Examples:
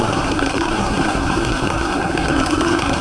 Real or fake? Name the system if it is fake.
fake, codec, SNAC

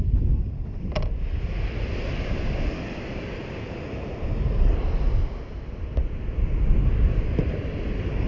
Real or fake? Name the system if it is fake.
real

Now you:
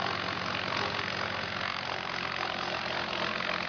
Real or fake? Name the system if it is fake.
real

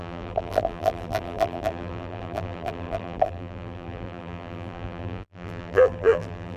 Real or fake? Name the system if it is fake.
fake, vocoder, BigVGAN v2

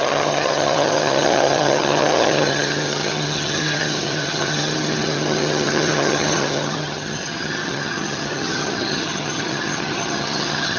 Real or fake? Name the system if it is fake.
fake, vocoder, HiFi-GAN